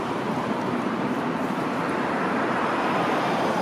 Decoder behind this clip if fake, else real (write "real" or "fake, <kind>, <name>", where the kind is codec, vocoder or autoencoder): fake, vocoder, BigVGAN v2